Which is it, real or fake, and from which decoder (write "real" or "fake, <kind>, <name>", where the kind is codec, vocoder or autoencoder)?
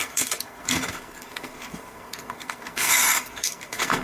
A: fake, codec, SNAC